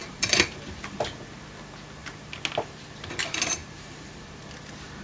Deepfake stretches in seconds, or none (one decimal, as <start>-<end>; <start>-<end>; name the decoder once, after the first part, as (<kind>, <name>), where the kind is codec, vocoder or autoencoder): 0.0-0.8 (vocoder, BigVGAN v2); 3.6-4.4